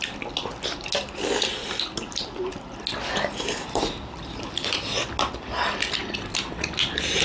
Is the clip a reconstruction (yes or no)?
no